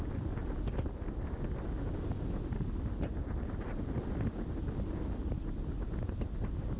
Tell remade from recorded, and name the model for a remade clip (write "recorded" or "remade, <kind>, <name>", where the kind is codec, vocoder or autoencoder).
recorded